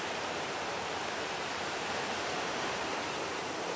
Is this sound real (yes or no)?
no